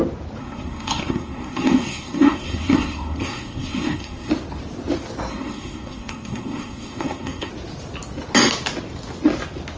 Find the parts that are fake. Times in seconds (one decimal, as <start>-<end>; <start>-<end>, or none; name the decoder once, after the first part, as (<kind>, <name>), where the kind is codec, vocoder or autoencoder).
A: 0.4-4.3 (codec, SNAC); 5.3-7.5